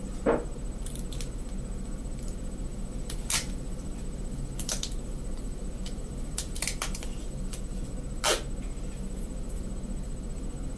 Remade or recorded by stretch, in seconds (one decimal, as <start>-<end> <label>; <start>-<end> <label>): 0.0-2.7 recorded; 2.7-7.9 remade; 7.9-10.8 recorded